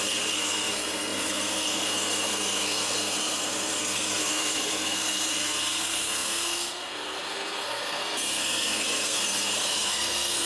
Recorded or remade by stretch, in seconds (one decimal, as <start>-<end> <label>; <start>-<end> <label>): 0.0-10.5 remade

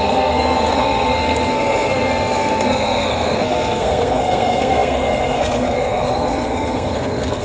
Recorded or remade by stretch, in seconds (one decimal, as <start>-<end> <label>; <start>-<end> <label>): 0.0-7.4 remade

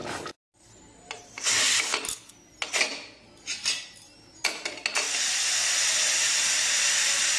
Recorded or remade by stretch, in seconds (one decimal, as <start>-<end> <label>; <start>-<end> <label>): 0.0-7.4 recorded

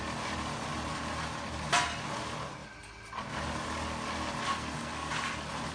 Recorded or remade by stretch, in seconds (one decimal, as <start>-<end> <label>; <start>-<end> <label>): 0.0-4.5 recorded; 4.5-5.1 remade; 5.1-5.7 recorded

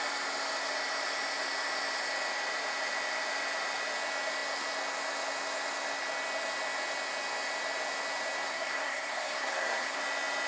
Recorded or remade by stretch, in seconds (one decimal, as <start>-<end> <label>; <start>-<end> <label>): 0.0-8.5 recorded; 8.5-10.0 remade; 10.0-10.5 recorded